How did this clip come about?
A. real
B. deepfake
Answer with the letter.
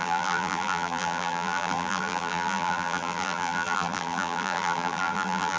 B